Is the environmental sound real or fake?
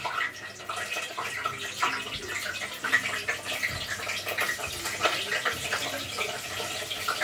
real